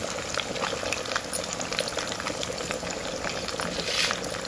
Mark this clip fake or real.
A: real